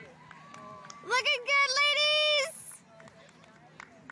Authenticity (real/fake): real